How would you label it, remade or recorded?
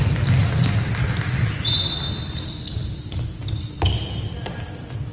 recorded